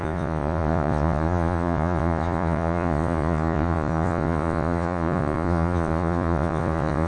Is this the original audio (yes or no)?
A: no